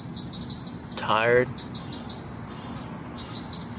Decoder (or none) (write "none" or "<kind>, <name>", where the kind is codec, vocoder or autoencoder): none